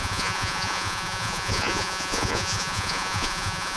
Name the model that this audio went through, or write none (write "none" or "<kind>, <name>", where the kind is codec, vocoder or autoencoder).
vocoder, Vocos